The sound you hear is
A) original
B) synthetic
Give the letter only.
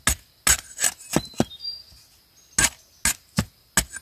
A